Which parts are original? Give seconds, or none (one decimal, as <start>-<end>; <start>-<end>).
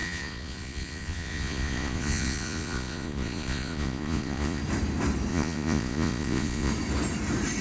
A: 4.6-5.3; 6.7-7.6